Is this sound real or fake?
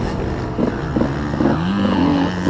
real